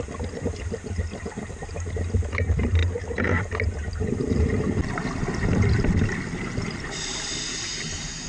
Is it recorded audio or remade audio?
recorded